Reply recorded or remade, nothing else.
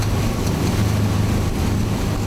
recorded